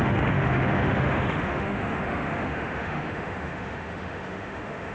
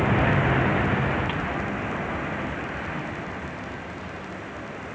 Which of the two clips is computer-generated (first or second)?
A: first